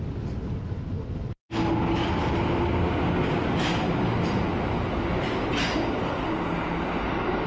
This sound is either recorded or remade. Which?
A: recorded